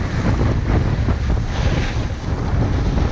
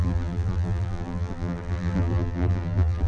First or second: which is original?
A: first